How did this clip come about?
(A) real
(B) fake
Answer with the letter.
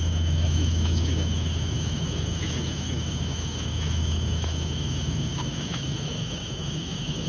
B